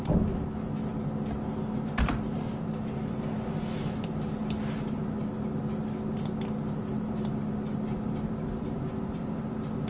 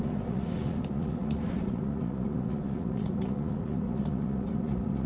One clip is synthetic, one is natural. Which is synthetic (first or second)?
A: second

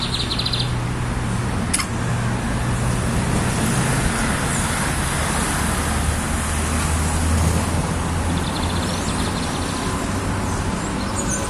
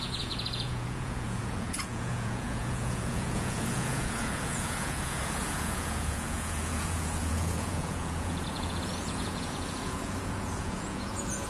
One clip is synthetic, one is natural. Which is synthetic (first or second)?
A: second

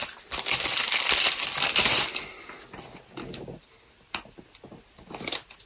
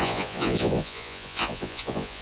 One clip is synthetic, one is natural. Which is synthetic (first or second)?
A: second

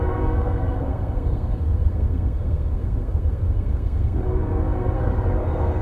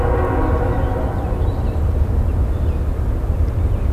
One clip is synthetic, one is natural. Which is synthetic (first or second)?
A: first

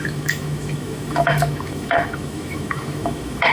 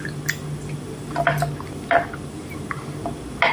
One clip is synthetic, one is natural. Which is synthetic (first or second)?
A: first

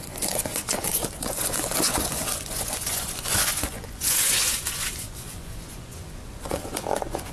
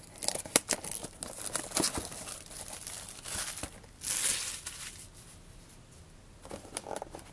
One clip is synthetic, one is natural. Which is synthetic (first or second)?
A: first